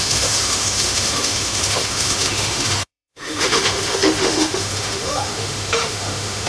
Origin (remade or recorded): remade